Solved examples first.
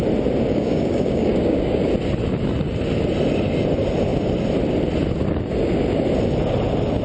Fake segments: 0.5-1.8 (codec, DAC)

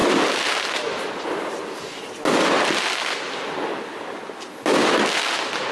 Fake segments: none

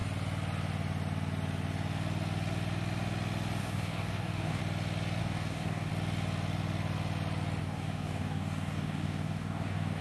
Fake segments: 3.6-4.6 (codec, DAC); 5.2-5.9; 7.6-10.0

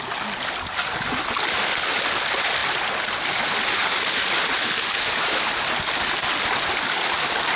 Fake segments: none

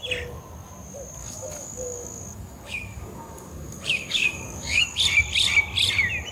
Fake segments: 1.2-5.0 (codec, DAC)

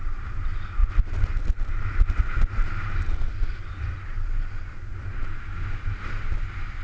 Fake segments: none